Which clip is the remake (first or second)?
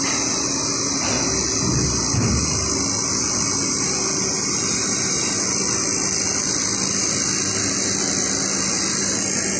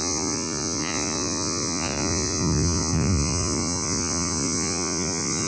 second